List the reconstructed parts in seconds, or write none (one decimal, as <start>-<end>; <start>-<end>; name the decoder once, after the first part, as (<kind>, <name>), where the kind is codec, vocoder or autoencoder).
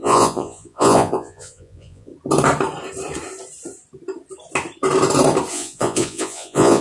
0.0-2.1 (vocoder, Vocos); 5.5-6.8